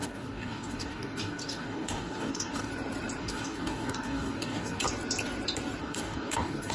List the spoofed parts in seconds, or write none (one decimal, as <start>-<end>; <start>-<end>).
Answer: 0.0-2.7; 3.2-4.8; 5.8-6.7